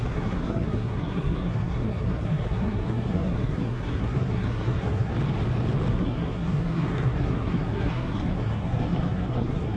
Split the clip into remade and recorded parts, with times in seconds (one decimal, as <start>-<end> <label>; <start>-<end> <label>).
0.0-5.1 remade; 5.1-5.9 recorded; 5.9-9.8 remade